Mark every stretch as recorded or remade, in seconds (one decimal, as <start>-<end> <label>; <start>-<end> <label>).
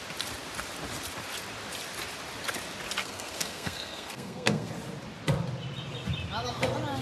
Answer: 0.0-3.0 recorded; 3.0-4.7 remade; 4.7-7.0 recorded